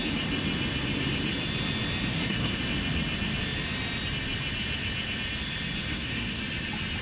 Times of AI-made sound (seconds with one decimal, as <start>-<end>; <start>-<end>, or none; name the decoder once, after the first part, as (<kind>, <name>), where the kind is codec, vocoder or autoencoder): 2.1-2.6 (codec, SNAC); 5.9-6.4